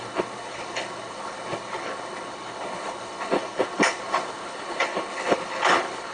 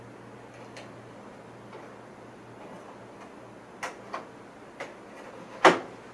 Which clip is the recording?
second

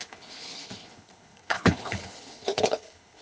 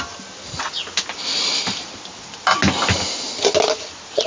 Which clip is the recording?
second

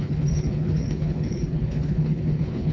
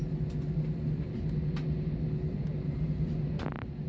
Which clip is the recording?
second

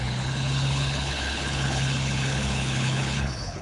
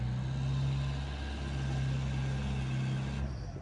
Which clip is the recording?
second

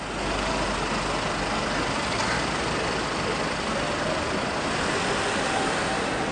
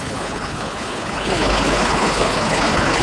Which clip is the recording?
first